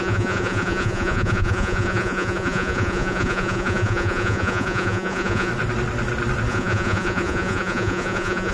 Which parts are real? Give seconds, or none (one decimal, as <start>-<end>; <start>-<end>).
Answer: 5.5-6.5